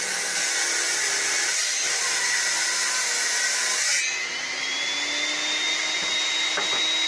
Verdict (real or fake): real